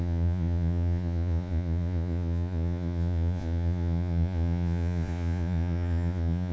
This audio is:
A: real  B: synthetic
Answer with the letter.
B